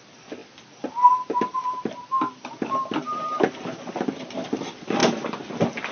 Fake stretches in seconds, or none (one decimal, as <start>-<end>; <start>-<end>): none